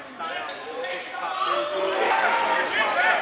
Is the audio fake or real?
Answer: fake